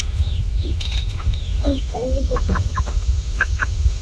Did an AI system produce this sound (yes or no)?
yes